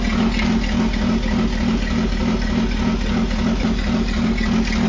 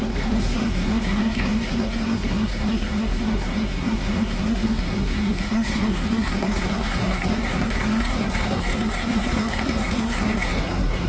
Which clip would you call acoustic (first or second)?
first